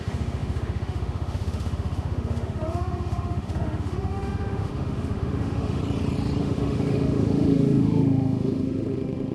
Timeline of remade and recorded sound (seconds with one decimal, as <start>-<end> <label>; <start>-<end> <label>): 0.0-5.8 remade; 5.8-6.4 recorded; 6.4-9.3 remade